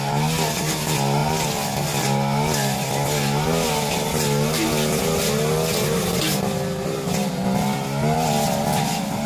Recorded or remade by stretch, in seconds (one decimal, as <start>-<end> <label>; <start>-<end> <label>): 0.0-9.3 recorded